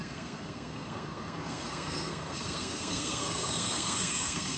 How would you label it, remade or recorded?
remade